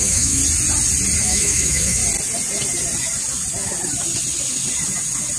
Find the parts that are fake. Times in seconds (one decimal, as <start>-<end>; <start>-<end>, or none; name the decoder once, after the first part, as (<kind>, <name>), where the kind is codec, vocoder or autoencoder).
0.0-0.4 (autoencoder, DAC-VAE); 1.2-2.0